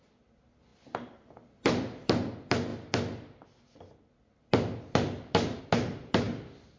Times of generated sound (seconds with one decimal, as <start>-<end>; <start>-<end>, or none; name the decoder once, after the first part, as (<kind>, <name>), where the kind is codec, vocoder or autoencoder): none